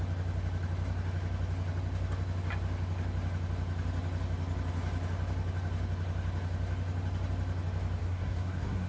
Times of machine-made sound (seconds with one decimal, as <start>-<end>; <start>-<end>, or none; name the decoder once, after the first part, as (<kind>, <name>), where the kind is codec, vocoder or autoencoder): 8.0-8.9 (codec, SNAC)